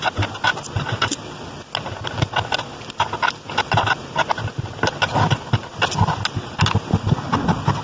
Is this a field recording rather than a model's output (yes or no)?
yes